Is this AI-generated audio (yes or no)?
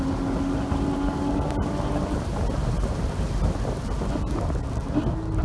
no